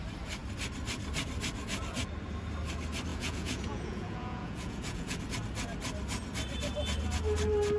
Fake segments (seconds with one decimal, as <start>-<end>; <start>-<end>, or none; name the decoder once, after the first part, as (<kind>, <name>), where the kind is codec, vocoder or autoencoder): 3.1-5.2 (vocoder, Vocos)